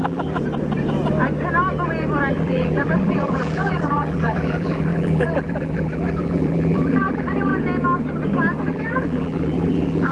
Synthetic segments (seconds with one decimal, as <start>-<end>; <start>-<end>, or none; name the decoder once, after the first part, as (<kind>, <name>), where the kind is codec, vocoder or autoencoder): 0.0-0.4 (vocoder, BigVGAN v2); 2.3-7.5; 8.6-10.1